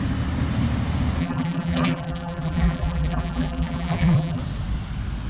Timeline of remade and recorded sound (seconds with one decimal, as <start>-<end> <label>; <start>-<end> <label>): 0.0-1.2 recorded; 1.2-4.4 remade; 4.4-5.3 recorded